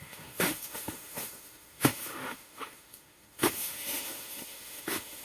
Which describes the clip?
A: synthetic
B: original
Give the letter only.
A